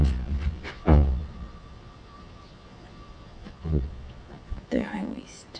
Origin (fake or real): fake